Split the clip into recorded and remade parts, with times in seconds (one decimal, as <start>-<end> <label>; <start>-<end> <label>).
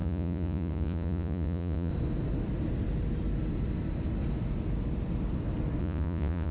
0.0-1.9 remade; 1.9-5.8 recorded; 5.8-6.5 remade